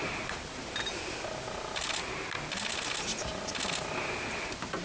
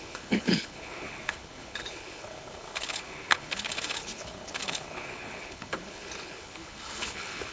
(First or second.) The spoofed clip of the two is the second